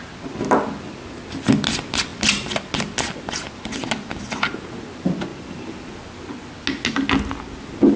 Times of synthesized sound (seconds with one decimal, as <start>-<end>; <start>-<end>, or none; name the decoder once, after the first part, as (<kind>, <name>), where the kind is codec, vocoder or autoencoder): 5.3-5.9 (vocoder, BigVGAN v2)